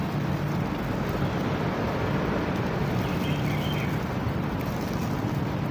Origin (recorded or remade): recorded